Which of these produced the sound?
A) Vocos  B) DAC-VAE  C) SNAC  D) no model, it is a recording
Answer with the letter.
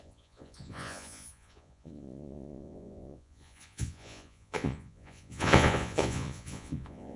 A